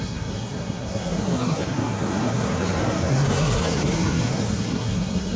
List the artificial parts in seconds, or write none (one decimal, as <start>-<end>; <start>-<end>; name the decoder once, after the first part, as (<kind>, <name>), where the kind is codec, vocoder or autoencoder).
0.0-5.4 (codec, SNAC)